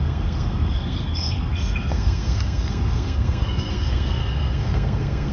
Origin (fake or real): fake